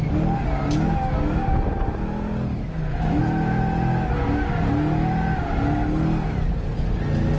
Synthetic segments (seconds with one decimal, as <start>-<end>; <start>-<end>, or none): 2.5-3.2